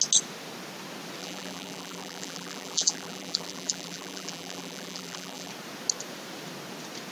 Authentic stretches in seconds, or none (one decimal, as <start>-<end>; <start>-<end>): 0.0-1.2; 5.5-7.1